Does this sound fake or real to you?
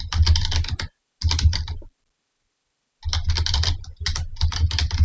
real